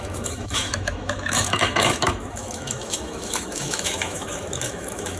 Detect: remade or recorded remade